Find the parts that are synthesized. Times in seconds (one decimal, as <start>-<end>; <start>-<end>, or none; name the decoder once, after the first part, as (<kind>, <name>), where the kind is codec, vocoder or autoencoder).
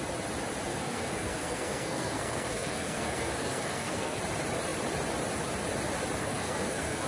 0.7-4.2 (codec, SNAC); 6.2-7.1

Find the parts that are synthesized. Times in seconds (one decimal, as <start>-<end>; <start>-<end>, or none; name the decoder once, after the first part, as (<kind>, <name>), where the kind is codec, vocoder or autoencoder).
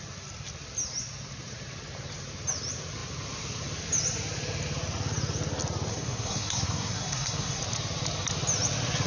5.9-7.6 (codec, SNAC)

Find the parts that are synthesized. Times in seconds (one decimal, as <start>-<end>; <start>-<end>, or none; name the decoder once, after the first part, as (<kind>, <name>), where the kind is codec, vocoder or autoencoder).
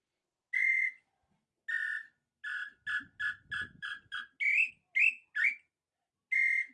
none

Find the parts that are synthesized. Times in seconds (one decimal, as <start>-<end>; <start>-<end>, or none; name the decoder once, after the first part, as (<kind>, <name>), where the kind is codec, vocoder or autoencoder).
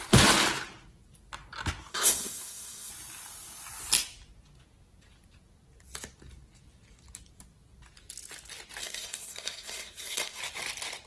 1.9-2.9 (codec, SNAC); 8.8-10.4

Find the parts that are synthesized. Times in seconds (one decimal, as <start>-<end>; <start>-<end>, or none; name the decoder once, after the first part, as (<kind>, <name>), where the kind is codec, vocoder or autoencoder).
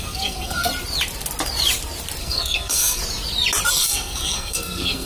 0.0-0.7 (codec, SNAC); 2.2-3.0; 3.7-5.1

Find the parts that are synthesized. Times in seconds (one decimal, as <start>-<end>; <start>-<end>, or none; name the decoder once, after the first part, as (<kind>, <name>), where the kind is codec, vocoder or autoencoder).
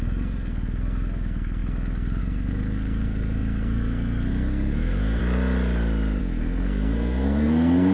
0.0-5.2 (codec, SNAC); 6.2-7.9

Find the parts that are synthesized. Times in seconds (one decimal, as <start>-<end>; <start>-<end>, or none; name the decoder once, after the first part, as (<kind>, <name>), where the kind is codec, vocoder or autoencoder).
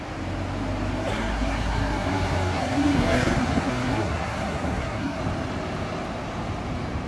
1.1-5.2 (codec, SNAC)